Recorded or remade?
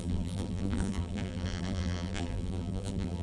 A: remade